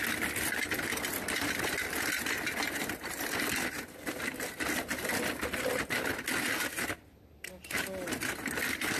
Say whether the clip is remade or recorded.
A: recorded